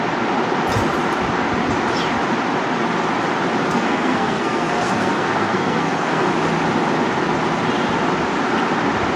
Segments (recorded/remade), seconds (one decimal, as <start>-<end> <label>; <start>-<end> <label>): 0.0-3.7 recorded; 3.7-6.3 remade; 6.3-9.2 recorded